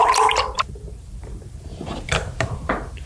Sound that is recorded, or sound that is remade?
remade